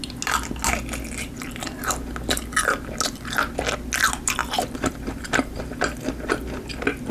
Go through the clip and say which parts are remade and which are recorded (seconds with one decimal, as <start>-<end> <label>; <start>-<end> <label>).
0.0-4.4 recorded; 4.4-5.6 remade; 5.6-7.1 recorded